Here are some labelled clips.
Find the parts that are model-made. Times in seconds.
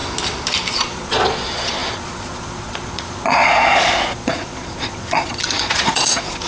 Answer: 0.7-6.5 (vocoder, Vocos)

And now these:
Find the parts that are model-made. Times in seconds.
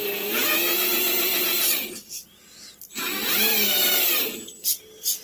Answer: 0.0-2.0 (vocoder, Vocos)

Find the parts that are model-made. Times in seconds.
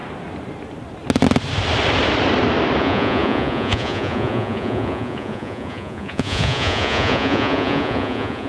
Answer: 2.8-8.5 (vocoder, Vocos)